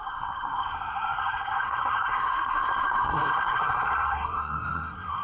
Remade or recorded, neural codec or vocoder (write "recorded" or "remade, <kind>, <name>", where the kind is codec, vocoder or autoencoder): remade, codec, SNAC